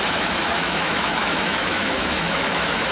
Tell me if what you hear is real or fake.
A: fake